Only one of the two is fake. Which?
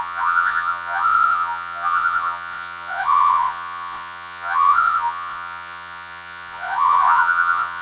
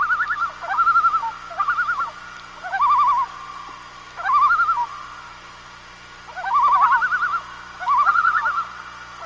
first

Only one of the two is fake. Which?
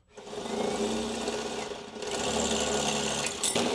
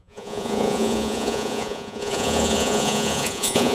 second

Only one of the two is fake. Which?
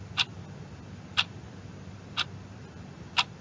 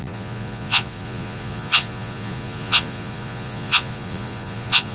second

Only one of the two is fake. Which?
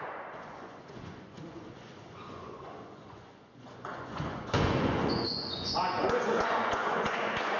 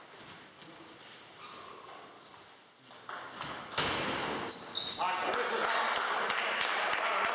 first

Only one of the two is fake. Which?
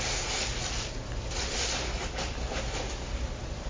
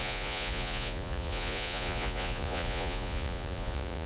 second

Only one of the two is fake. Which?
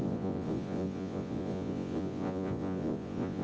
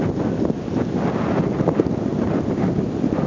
first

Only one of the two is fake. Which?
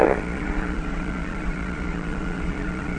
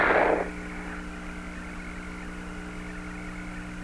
first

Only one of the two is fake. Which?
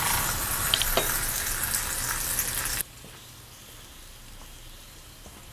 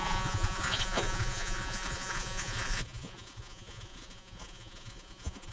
second